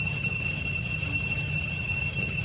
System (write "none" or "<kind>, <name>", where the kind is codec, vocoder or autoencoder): autoencoder, DAC-VAE